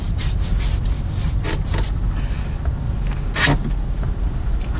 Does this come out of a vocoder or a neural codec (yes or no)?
no